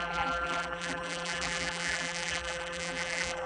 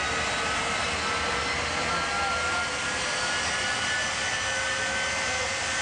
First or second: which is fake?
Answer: first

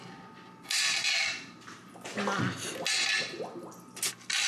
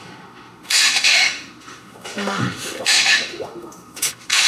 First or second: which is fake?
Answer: second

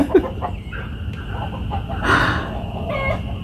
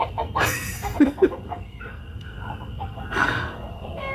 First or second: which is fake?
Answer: second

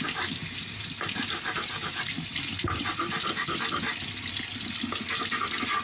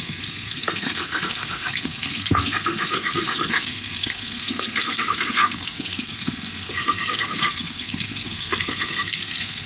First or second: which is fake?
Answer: second